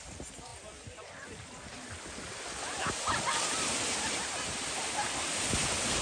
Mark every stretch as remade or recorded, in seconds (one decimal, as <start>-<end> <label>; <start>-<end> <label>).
0.0-6.0 recorded